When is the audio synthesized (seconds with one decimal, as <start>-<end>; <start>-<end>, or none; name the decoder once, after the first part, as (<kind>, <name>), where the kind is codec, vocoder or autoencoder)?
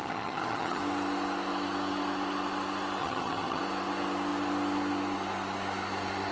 0.0-0.8 (vocoder, HiFi-GAN); 3.0-3.6